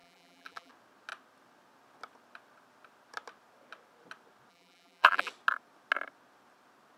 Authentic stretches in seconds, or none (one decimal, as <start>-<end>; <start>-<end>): 0.7-4.5; 5.3-7.0